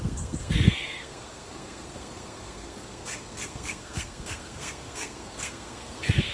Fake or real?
fake